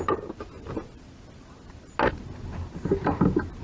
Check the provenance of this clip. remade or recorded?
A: recorded